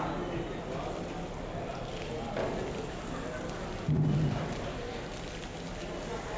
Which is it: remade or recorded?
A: recorded